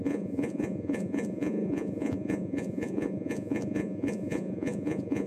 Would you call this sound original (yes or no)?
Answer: no